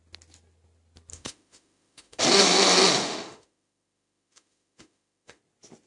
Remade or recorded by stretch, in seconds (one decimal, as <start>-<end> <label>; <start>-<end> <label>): 0.0-1.1 recorded; 1.1-2.2 remade; 2.2-3.0 recorded; 3.0-5.4 remade; 5.4-5.9 recorded